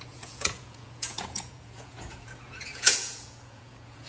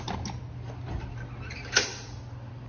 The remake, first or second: first